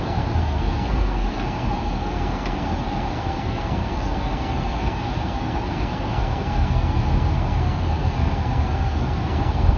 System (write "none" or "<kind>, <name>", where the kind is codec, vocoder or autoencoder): codec, SNAC